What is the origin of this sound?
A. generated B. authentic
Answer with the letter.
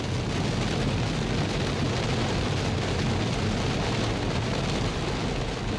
B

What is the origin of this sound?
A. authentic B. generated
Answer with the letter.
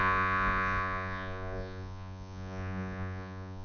B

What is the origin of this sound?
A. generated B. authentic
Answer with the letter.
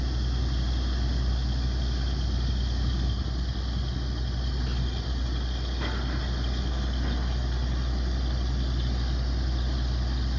B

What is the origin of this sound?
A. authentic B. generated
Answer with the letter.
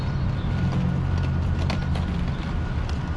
A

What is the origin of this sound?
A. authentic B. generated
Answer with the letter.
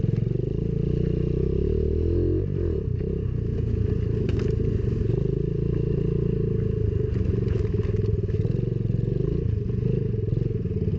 A